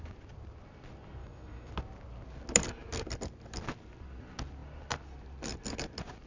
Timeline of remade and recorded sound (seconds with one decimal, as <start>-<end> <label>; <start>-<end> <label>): 0.0-1.2 recorded; 1.2-1.7 remade; 1.7-6.3 recorded

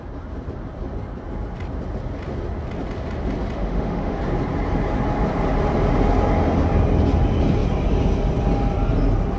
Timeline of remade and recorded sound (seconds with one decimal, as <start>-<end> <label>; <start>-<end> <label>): 0.0-3.6 recorded; 3.6-4.2 remade; 4.2-9.4 recorded

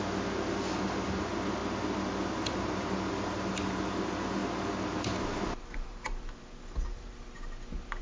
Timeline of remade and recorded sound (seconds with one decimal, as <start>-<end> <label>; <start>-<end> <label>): 0.0-8.0 recorded

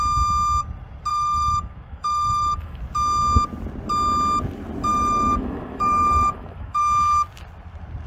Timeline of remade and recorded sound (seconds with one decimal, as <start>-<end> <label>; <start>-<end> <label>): 0.0-1.1 recorded; 1.1-2.8 remade; 2.8-4.9 recorded; 4.9-6.8 remade; 6.8-8.1 recorded

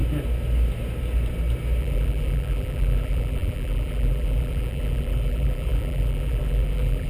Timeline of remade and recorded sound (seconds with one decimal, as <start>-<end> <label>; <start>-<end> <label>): 0.0-1.8 recorded; 1.8-7.1 remade

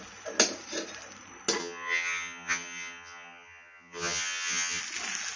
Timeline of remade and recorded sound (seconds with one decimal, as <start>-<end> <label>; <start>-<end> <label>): 0.0-1.6 recorded; 1.6-4.8 remade; 4.8-5.4 recorded

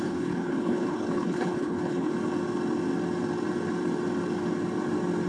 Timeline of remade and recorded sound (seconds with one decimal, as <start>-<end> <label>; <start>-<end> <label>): 0.0-2.1 remade; 2.1-5.3 recorded

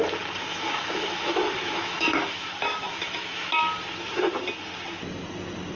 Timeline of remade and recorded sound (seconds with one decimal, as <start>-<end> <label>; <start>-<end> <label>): 0.0-0.5 recorded; 0.5-3.7 remade; 3.7-5.8 recorded